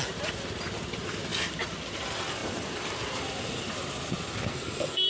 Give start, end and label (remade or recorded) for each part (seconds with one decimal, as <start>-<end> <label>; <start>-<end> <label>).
0.0-4.5 recorded; 4.5-5.1 remade